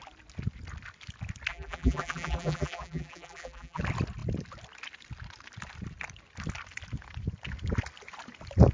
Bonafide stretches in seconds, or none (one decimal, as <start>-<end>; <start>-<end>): 0.0-1.5; 3.8-8.7